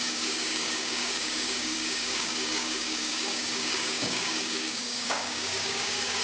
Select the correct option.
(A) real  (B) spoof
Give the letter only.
B